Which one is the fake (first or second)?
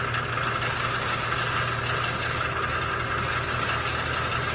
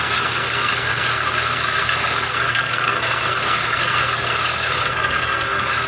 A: second